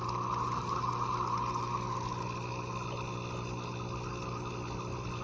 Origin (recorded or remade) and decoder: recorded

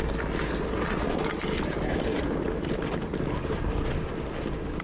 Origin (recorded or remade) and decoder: recorded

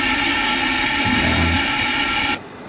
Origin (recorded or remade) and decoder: recorded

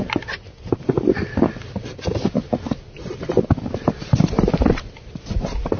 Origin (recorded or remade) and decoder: recorded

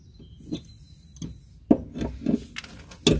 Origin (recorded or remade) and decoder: recorded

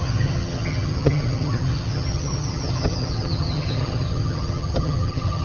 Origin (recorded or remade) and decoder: remade, vocoder, HiFi-GAN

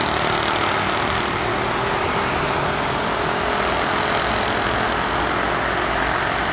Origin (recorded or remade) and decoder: recorded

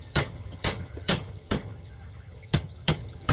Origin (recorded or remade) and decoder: remade, vocoder, HiFi-GAN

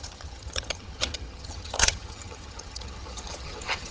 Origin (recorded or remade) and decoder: remade, vocoder, HiFi-GAN